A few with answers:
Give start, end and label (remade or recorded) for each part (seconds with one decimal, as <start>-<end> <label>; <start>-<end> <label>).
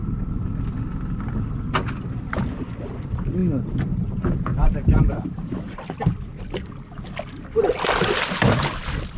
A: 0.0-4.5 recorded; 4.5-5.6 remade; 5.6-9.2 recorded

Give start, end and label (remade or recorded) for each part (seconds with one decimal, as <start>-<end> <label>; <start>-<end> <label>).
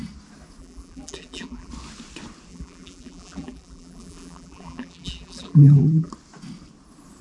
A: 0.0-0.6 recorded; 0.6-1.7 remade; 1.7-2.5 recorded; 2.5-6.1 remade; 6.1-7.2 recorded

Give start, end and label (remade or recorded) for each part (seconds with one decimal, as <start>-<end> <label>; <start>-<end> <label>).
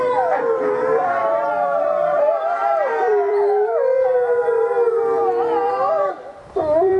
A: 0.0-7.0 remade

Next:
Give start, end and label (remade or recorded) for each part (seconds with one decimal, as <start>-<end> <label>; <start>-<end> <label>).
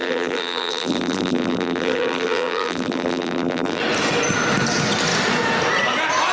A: 0.0-3.8 remade; 3.8-6.3 recorded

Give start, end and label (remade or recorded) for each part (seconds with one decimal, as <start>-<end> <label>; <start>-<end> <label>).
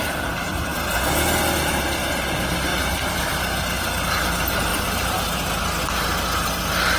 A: 0.0-2.7 recorded; 2.7-3.4 remade; 3.4-4.7 recorded; 4.7-5.2 remade; 5.2-7.0 recorded